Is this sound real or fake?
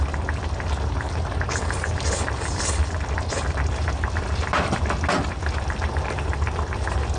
real